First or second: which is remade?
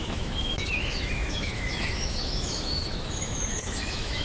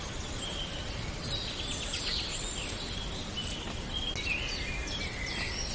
first